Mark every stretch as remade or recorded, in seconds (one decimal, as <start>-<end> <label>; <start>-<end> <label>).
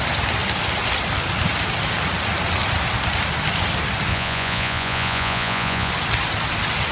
0.0-4.1 recorded; 4.1-5.9 remade; 5.9-6.9 recorded